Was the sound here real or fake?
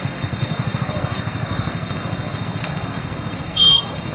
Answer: fake